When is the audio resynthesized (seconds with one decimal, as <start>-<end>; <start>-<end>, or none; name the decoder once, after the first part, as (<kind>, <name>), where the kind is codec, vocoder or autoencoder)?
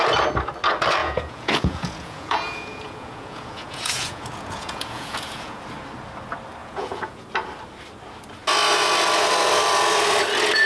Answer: 1.0-5.6 (vocoder, Vocos); 6.6-7.2